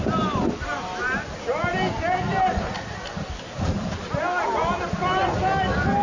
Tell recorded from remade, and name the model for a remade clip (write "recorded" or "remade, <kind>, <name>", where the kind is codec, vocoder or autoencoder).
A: recorded